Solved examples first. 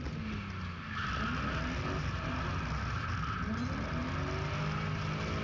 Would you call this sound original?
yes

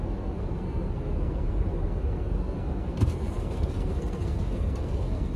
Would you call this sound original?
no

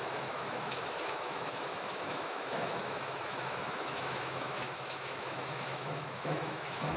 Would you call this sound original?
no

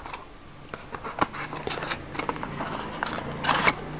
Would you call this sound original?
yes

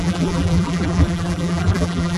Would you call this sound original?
no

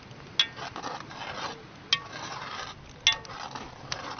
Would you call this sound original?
yes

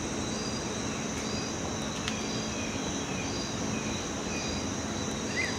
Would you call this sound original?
yes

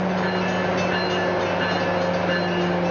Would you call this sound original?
yes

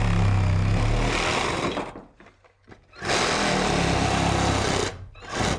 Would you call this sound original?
yes